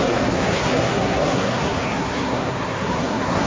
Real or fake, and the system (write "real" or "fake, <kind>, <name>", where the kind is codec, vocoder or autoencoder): fake, codec, SNAC